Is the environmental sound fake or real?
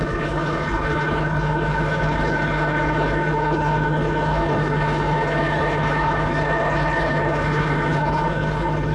fake